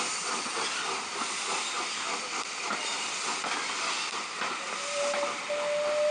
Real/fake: real